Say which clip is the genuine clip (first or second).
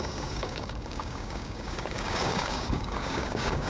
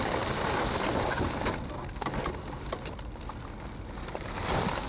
second